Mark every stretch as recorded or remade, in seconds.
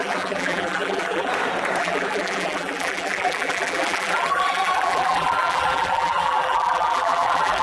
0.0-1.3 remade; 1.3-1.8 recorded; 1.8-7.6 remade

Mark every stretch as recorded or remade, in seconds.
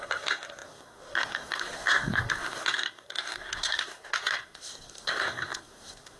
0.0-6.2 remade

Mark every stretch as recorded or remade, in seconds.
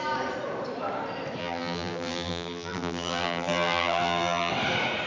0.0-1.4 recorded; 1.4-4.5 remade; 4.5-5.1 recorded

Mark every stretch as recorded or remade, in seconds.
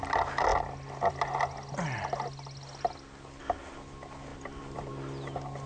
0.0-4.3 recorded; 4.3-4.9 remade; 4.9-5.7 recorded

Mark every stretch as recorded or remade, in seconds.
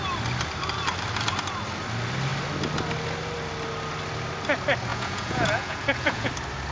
0.0-4.9 recorded; 4.9-6.3 remade; 6.3-6.7 recorded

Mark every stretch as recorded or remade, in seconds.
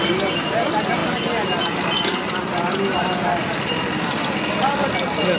0.0-5.4 recorded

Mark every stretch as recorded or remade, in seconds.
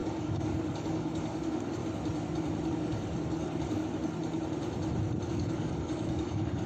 0.0-1.8 remade; 1.8-2.7 recorded; 2.7-3.8 remade; 3.8-5.3 recorded; 5.3-6.7 remade